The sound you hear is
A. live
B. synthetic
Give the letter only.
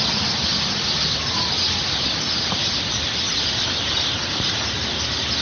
A